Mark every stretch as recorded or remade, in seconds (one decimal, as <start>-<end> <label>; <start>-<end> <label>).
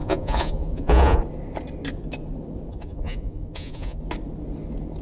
0.0-1.2 remade; 1.2-2.7 recorded; 2.7-4.0 remade; 4.0-5.0 recorded